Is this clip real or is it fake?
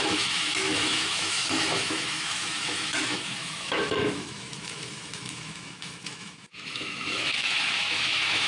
fake